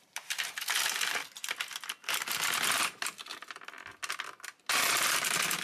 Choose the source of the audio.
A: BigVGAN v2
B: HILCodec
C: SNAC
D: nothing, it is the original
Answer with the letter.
D